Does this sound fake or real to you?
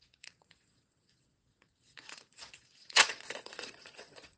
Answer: fake